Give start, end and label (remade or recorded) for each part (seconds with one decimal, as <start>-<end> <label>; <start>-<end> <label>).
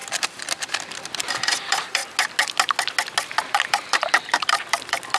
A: 0.0-2.0 remade; 2.0-3.4 recorded; 3.4-5.2 remade